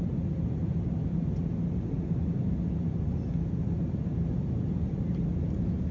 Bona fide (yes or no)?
yes